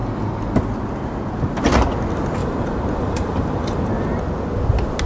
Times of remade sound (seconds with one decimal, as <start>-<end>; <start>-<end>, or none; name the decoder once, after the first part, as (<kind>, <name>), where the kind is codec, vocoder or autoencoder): 2.4-3.9 (vocoder, BigVGAN v2)